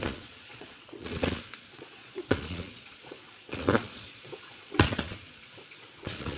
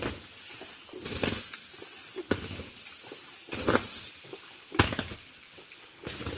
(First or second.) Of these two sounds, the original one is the second